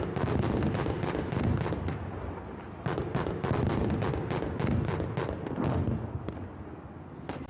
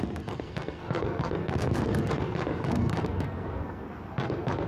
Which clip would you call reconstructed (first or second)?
second